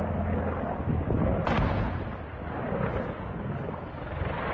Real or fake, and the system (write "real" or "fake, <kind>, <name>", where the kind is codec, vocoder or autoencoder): real